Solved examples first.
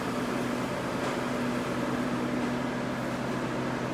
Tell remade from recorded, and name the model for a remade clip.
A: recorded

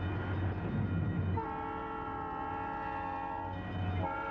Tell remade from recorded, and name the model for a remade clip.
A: recorded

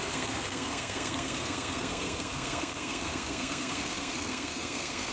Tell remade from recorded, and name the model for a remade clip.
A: remade, codec, SNAC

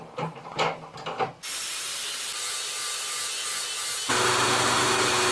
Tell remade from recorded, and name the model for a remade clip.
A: recorded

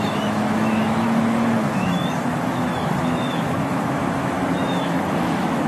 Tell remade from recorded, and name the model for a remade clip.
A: remade, autoencoder, DAC-VAE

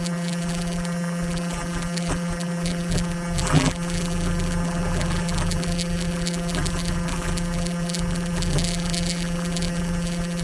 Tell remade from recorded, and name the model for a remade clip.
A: remade, vocoder, BigVGAN v2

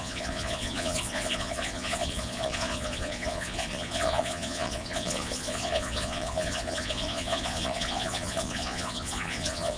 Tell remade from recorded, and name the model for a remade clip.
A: remade, vocoder, Vocos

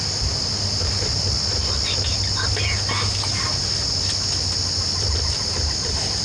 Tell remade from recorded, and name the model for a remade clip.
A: recorded